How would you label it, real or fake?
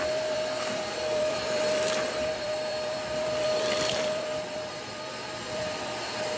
fake